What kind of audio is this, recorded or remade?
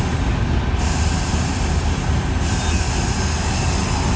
recorded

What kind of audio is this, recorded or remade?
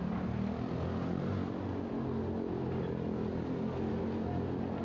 recorded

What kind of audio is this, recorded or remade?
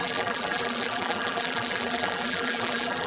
remade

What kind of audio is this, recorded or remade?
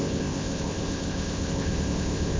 remade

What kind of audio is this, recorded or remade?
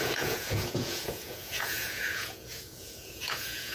remade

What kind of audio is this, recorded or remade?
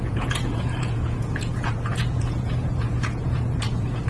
remade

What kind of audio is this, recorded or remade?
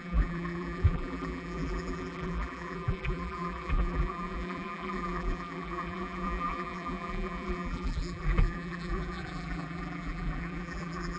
remade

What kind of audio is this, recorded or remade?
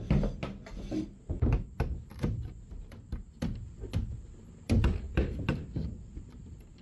recorded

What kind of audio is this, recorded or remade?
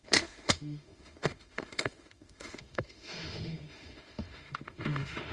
remade